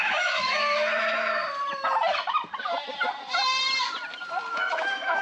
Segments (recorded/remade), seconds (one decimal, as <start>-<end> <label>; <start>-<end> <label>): 0.0-1.4 remade; 1.4-4.5 recorded; 4.5-5.2 remade